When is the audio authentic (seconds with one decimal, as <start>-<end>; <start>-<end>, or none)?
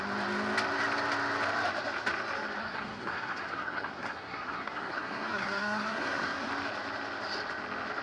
0.0-2.6; 6.5-8.0